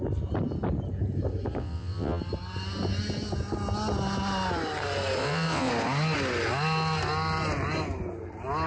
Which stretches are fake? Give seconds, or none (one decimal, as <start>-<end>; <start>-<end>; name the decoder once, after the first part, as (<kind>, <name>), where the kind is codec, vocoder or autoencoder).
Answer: 1.6-2.2 (vocoder, WaveNeXt); 5.2-5.7